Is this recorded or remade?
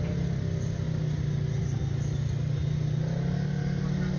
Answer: recorded